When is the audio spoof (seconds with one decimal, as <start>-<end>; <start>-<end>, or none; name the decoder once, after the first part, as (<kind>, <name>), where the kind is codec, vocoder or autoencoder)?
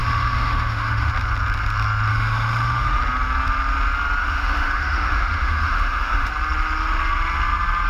0.0-1.1 (autoencoder, DAC-VAE); 2.1-3.0; 4.2-6.3